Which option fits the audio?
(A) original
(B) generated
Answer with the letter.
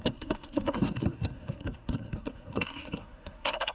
B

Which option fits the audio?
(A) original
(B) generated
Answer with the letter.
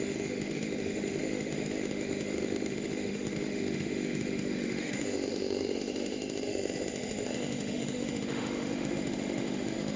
B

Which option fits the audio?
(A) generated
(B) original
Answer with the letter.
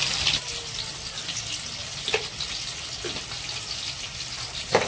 B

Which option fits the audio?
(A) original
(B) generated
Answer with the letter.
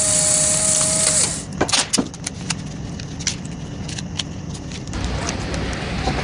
A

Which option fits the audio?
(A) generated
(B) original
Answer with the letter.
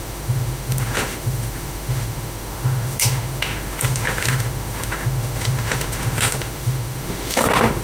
A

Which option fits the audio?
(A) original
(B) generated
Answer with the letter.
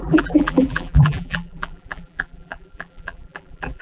B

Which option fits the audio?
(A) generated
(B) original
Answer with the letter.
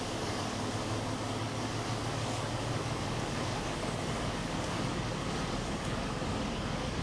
A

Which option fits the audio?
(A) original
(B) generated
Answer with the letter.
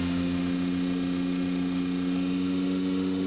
B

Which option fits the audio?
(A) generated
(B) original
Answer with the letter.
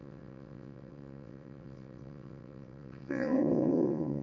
A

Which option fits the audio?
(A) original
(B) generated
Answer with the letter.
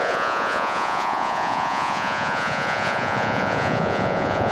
B